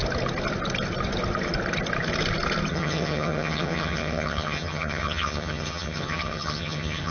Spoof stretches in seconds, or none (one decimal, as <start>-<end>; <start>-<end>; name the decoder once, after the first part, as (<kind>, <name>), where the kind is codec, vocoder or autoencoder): 2.7-7.1 (vocoder, HiFi-GAN)